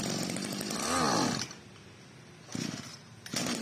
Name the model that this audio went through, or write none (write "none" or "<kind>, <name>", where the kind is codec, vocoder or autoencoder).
none